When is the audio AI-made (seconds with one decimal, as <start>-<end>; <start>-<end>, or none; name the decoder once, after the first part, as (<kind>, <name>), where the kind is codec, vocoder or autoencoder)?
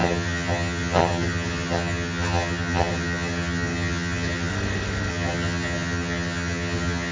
0.0-4.5 (vocoder, HiFi-GAN); 5.1-7.1